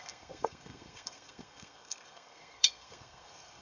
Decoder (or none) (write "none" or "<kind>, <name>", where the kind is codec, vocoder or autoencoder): codec, SNAC